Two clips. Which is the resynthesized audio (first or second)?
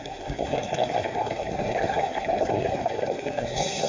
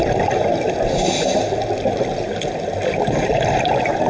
first